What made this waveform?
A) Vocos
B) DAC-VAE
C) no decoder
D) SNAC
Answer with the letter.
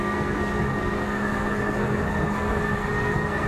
D